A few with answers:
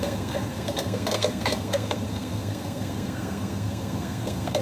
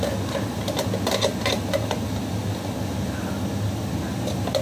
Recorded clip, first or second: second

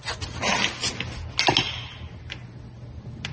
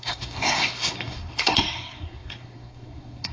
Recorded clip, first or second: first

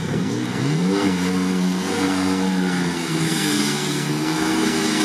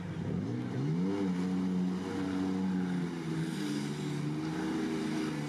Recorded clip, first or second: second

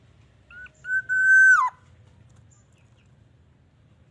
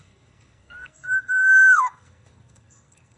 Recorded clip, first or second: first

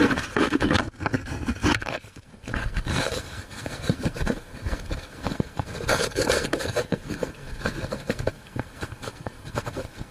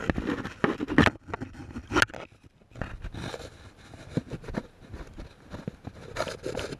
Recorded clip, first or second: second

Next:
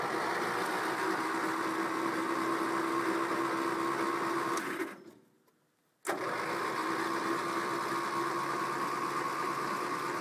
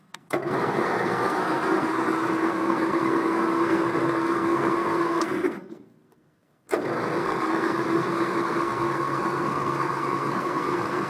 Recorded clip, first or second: first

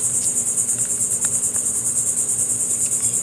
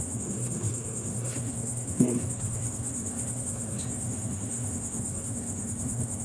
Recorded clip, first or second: first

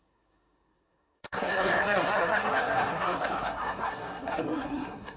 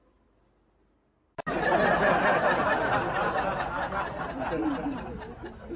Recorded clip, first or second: second